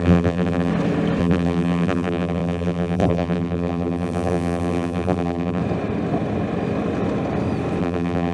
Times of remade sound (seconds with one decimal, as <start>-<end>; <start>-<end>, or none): 0.0-0.7; 1.2-5.6; 7.8-8.3